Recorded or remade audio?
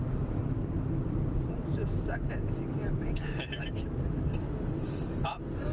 recorded